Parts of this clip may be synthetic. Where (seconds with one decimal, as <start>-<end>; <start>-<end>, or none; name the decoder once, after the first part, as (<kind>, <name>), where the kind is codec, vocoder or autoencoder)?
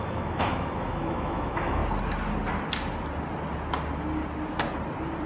0.0-1.8 (autoencoder, DAC-VAE)